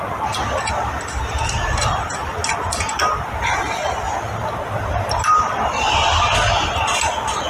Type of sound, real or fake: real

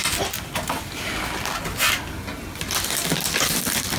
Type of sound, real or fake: real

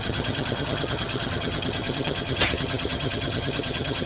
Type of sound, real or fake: fake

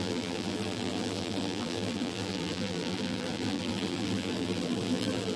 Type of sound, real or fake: fake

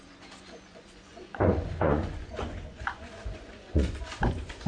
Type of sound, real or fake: fake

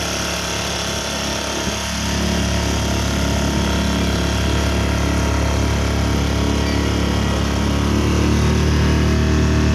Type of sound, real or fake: real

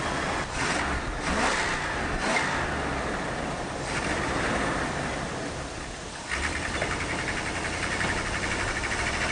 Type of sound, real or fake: real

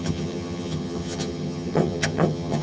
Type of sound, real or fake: fake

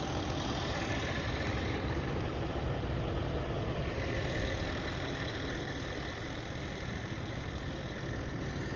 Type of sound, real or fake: real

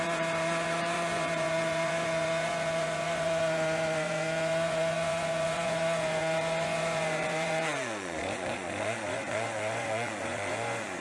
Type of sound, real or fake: fake